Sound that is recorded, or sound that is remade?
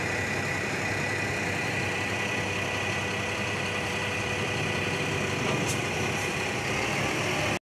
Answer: recorded